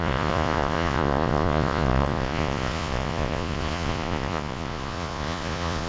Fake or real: fake